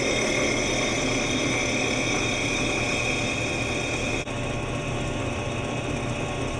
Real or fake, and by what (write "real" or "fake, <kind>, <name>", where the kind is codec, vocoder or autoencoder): real